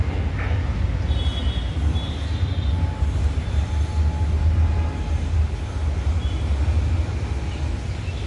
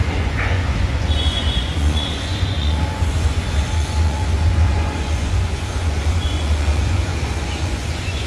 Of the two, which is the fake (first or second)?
second